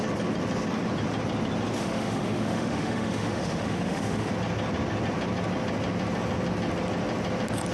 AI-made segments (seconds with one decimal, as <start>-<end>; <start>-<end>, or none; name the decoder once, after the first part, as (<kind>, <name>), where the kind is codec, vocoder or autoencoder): 1.8-4.3 (autoencoder, DAC-VAE)